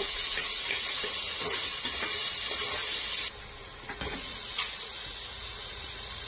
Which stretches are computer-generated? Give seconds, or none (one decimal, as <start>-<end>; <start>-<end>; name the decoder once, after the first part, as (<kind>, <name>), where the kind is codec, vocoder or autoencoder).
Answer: 0.0-1.7 (vocoder, Vocos); 3.6-6.3